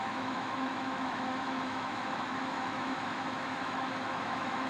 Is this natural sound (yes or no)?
no